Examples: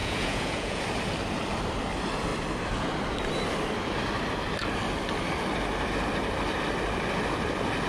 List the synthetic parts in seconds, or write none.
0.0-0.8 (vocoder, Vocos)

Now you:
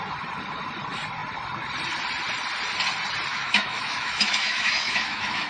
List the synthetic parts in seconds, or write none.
3.3-5.5 (autoencoder, DAC-VAE)

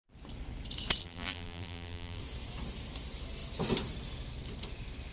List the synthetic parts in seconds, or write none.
1.0-2.2 (vocoder, BigVGAN v2)

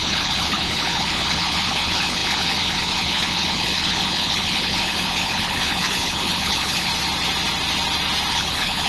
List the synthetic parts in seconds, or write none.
0.0-6.9 (codec, HILCodec); 8.3-8.9